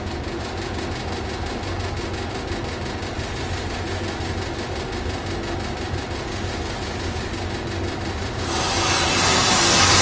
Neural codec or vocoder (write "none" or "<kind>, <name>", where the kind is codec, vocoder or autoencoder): none